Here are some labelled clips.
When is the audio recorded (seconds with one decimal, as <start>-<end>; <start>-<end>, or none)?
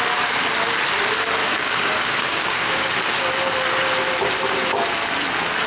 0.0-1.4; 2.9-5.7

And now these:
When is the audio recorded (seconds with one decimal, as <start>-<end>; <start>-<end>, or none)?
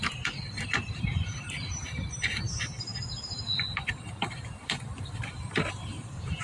none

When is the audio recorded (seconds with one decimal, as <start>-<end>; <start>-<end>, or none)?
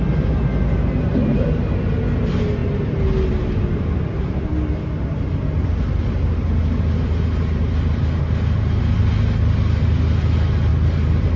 0.0-10.7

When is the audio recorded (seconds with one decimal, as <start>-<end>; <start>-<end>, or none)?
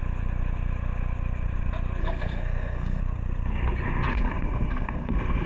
0.0-2.0; 3.0-4.1